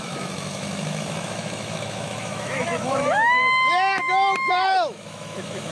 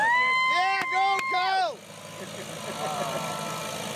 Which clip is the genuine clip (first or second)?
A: second